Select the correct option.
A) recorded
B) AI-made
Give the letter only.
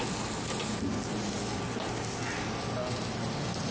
A